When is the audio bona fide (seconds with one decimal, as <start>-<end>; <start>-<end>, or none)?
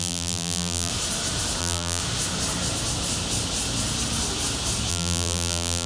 0.9-1.6; 2.0-4.9